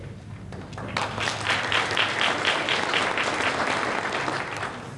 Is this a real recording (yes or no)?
yes